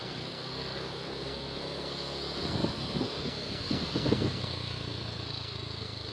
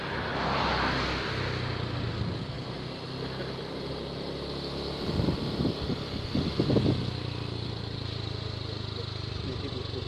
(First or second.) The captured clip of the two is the second